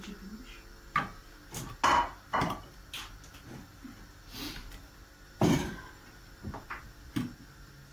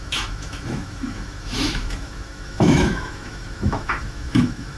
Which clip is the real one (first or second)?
first